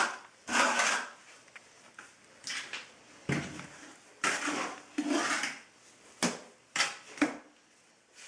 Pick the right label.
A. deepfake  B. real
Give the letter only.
B